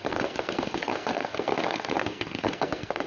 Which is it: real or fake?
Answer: fake